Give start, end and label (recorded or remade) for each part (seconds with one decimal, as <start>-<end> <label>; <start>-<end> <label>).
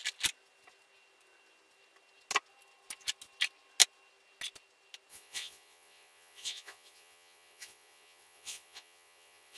0.0-5.1 recorded; 5.1-9.6 remade